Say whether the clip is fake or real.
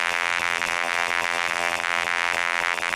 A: fake